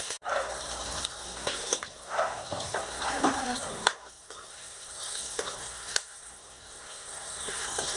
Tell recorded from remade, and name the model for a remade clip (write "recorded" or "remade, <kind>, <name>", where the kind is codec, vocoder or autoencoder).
remade, codec, SNAC